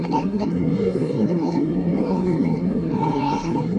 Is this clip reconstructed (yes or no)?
yes